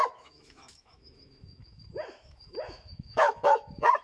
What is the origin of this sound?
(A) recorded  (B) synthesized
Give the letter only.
B